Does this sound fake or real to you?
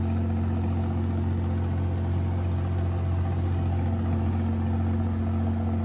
real